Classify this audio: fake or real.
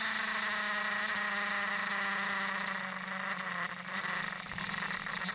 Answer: real